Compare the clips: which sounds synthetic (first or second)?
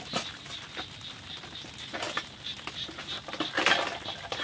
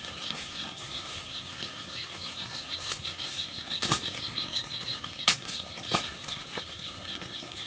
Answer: second